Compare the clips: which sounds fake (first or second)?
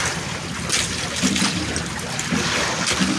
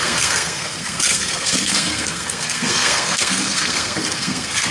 second